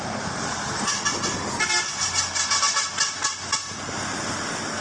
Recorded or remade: recorded